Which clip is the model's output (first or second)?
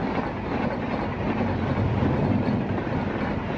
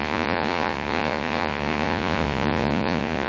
second